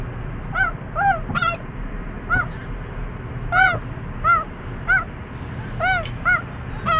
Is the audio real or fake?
real